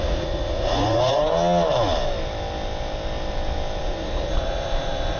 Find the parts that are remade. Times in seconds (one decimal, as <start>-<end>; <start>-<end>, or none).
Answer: 0.0-1.2; 3.8-5.2